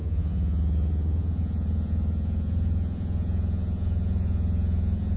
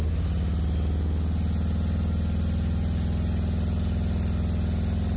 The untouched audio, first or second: second